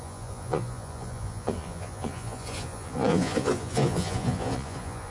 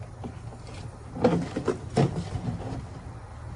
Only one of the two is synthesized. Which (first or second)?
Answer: first